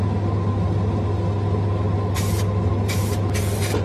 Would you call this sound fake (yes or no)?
no